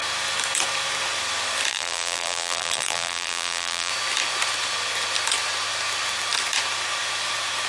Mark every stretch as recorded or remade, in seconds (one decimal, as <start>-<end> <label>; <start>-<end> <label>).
0.0-1.7 recorded; 1.7-3.9 remade; 3.9-7.7 recorded